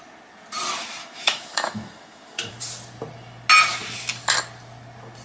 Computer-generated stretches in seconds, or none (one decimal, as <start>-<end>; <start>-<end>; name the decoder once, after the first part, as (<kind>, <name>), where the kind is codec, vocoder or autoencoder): 1.0-2.6 (autoencoder, DAC-VAE)